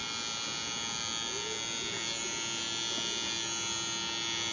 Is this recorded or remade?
recorded